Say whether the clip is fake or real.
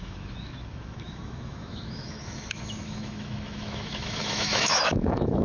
fake